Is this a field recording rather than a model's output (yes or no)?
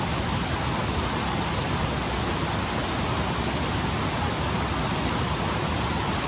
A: yes